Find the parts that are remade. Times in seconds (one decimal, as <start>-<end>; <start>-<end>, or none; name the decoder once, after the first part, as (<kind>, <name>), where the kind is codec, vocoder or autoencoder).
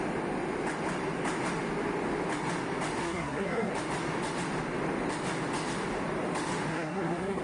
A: 3.0-3.7 (codec, SNAC); 6.7-7.4